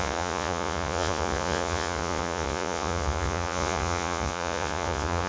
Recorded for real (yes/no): no